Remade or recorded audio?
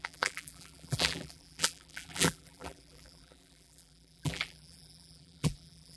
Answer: remade